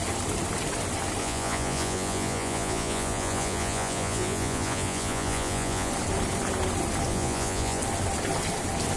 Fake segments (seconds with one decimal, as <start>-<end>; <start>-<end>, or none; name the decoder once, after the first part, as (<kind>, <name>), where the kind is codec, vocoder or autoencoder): 1.2-5.9 (vocoder, Vocos); 7.1-7.8